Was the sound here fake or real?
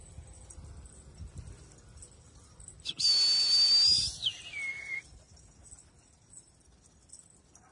real